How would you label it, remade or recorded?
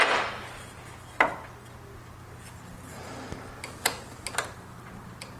recorded